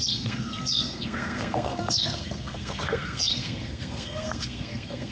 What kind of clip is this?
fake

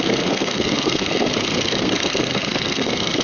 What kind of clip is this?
fake